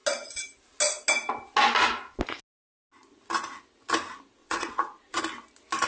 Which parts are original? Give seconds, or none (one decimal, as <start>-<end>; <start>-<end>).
0.0-4.4; 5.2-5.9

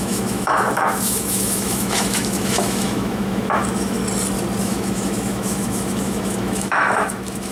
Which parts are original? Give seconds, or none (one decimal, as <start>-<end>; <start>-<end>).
4.0-4.6

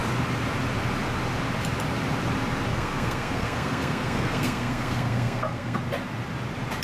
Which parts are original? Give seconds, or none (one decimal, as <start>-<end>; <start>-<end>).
0.0-2.7; 5.8-6.8

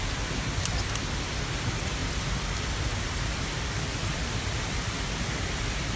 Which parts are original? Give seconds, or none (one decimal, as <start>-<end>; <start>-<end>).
0.0-6.0

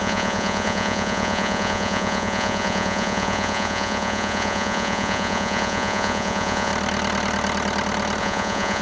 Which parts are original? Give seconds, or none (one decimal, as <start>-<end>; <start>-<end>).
6.7-8.2

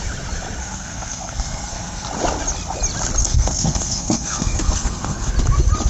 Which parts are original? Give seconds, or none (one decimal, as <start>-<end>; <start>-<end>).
0.0-0.6; 2.1-3.2; 5.3-5.9